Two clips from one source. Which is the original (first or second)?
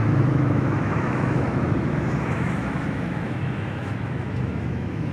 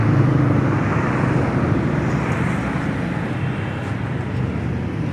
second